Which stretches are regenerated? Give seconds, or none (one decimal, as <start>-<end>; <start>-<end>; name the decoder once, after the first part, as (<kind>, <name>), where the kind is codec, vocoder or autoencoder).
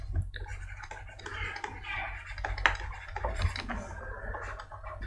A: none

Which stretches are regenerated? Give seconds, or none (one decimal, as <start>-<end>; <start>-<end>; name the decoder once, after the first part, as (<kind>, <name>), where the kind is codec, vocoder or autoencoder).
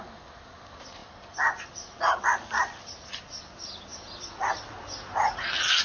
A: 3.9-4.6 (vocoder, BigVGAN v2)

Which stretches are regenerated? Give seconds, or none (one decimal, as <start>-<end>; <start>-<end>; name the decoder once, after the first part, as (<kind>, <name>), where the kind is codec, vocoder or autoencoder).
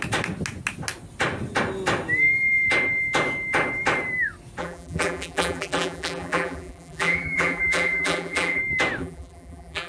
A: 4.6-8.6 (vocoder, BigVGAN v2); 9.0-9.9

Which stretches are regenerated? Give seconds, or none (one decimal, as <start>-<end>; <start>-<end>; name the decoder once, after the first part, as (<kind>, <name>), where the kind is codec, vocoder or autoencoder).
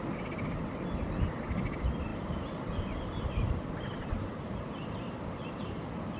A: none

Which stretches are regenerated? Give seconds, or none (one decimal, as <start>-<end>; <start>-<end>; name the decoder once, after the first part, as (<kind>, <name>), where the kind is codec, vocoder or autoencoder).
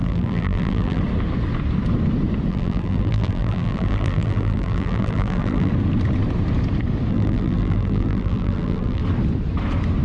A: 0.0-1.0 (vocoder, BigVGAN v2); 2.5-5.7; 7.1-9.0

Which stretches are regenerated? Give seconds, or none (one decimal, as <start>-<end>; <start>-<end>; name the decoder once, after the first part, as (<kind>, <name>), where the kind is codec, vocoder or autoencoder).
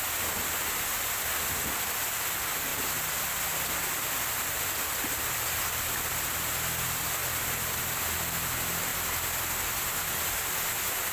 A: none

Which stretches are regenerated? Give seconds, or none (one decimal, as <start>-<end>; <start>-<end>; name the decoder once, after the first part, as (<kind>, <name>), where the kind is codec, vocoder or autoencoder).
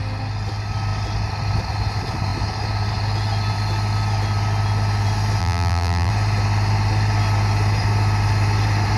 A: 5.4-6.1 (vocoder, BigVGAN v2)